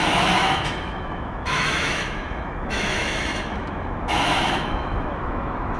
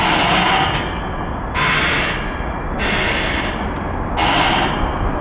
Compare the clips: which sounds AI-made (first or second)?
first